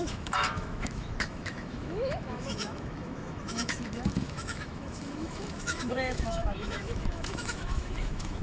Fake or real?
fake